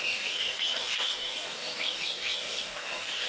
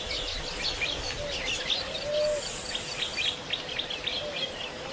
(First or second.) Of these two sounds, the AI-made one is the first